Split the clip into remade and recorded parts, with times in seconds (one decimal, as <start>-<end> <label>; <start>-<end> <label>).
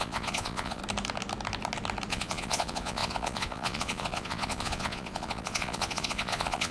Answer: 0.0-0.8 remade; 0.8-2.1 recorded; 2.1-6.7 remade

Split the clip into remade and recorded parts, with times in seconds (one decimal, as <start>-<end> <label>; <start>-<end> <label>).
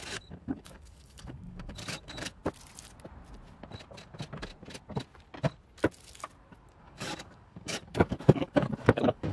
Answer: 0.0-2.4 remade; 2.4-6.8 recorded; 6.8-9.3 remade